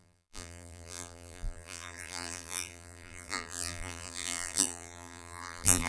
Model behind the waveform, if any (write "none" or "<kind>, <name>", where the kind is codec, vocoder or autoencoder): vocoder, BigVGAN v2